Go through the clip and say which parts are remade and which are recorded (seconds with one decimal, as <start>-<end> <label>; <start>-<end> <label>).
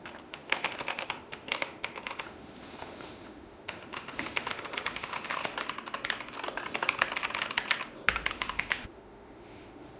0.0-5.5 remade; 5.5-8.3 recorded; 8.3-10.0 remade